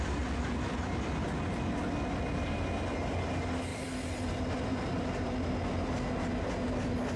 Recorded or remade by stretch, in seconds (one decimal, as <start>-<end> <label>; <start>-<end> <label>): 0.0-3.7 recorded; 3.7-4.2 remade; 4.2-4.7 recorded; 4.7-5.6 remade; 5.6-7.2 recorded